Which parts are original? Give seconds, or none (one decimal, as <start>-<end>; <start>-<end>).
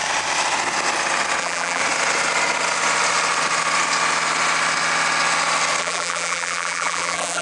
0.0-1.4; 1.8-5.8